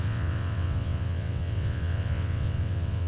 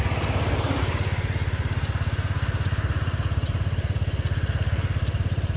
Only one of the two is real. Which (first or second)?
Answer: second